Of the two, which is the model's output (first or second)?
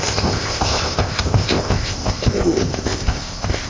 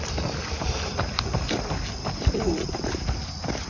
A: first